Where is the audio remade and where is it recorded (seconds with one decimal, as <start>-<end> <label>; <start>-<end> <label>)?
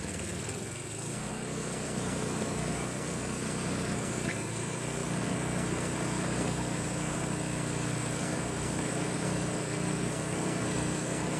0.0-11.4 remade